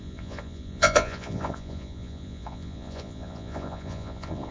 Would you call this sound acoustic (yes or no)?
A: no